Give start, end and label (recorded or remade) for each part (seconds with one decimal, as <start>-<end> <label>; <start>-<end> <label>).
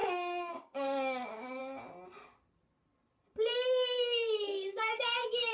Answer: 0.0-1.6 remade; 1.6-4.7 recorded; 4.7-5.5 remade